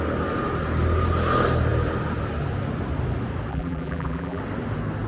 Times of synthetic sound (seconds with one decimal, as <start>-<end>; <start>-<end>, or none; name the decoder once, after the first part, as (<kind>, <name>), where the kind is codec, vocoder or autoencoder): 3.5-4.4 (vocoder, BigVGAN v2)